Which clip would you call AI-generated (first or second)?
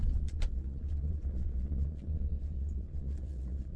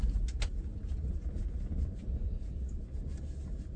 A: first